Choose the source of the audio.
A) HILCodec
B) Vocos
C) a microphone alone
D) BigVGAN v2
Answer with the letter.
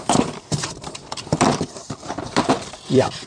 D